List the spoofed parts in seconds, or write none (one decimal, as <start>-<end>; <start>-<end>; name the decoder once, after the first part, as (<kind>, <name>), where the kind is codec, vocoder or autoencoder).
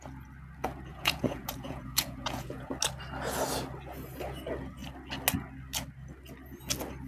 0.9-2.7 (vocoder, Vocos)